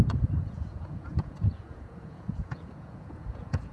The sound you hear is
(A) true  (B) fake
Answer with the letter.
B